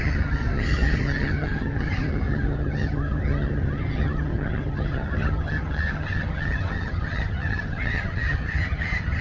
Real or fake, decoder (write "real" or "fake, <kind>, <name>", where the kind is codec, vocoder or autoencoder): fake, vocoder, HiFi-GAN